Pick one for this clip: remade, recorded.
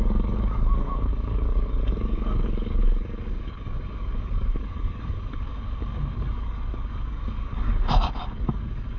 remade